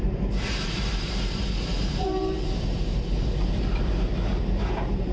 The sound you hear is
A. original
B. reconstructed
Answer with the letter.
B